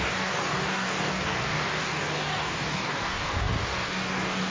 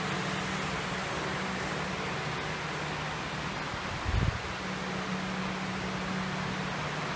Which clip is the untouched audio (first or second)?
second